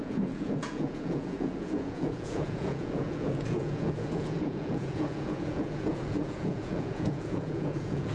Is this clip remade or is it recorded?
remade